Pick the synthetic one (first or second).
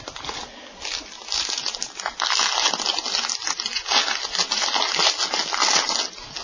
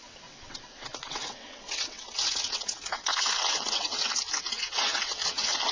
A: second